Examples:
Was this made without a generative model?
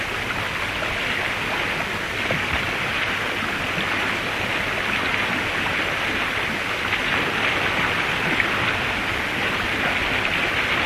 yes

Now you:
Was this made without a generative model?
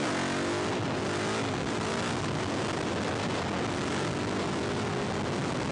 yes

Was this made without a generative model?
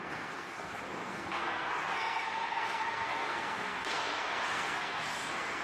no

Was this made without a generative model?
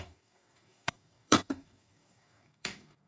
no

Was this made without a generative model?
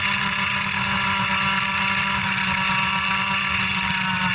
yes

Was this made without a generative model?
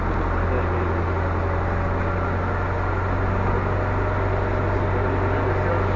yes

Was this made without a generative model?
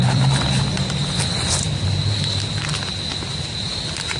yes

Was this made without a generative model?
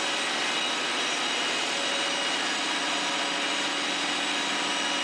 yes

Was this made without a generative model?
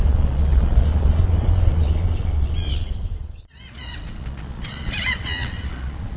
no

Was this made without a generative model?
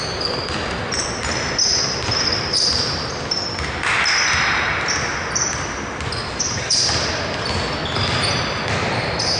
yes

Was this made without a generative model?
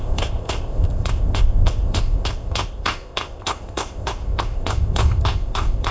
no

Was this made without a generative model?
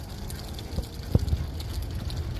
yes